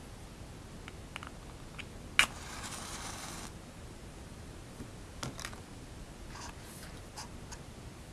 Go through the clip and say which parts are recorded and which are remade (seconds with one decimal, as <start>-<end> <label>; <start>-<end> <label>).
0.0-8.1 recorded

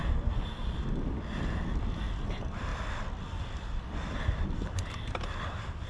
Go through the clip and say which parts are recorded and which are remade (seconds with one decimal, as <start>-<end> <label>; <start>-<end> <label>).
0.0-5.9 recorded

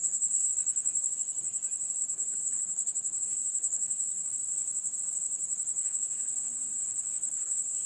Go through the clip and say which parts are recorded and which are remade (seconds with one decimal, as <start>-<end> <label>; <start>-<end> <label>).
0.0-0.5 remade; 0.5-2.0 recorded; 2.0-4.6 remade; 4.6-5.8 recorded; 5.8-7.9 remade